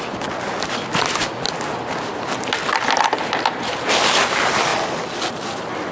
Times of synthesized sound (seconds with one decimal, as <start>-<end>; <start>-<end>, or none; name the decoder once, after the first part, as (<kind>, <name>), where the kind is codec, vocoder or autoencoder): none